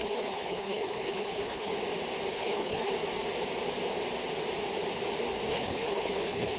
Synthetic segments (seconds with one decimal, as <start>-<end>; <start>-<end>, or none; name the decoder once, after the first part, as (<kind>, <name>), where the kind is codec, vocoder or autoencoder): 0.0-1.7 (codec, HILCodec); 2.3-2.9; 5.5-6.6